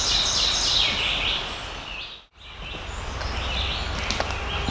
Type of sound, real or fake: real